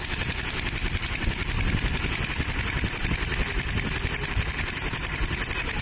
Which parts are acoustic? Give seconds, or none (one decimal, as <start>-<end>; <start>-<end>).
0.8-4.3; 5.2-5.8